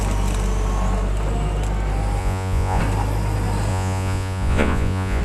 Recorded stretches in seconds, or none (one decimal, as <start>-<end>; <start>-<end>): 0.0-2.2; 2.8-3.7